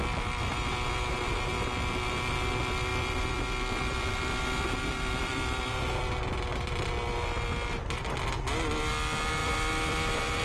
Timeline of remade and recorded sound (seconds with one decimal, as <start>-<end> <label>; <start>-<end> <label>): 0.0-0.5 recorded; 0.5-1.5 remade; 1.5-2.9 recorded; 2.9-6.0 remade; 6.0-9.4 recorded; 9.4-10.4 remade